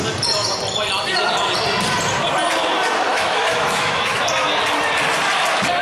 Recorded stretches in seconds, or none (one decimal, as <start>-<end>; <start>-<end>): 0.0-3.1; 4.2-5.8